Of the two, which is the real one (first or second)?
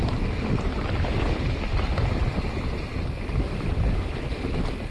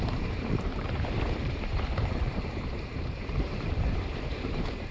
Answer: first